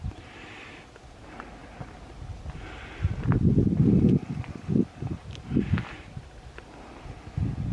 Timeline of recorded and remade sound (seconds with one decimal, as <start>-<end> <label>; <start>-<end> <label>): 0.0-7.7 recorded